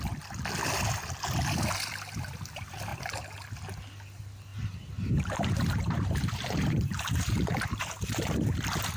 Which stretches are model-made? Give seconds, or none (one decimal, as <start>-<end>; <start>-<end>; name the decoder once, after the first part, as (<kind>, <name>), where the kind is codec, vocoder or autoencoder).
4.5-8.3 (vocoder, BigVGAN v2)